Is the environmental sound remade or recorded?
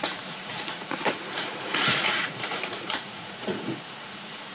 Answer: remade